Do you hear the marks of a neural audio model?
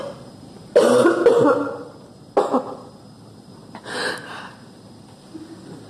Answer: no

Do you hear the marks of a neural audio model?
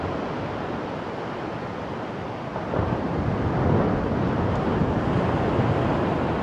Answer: no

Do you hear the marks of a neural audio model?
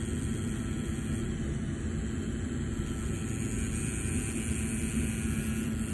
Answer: no